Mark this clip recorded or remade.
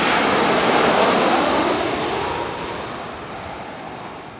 recorded